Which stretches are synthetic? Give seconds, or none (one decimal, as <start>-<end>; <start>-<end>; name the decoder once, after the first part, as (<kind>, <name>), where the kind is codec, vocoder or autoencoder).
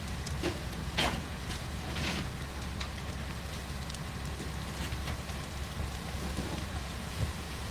0.0-2.3 (vocoder, Vocos); 6.7-7.7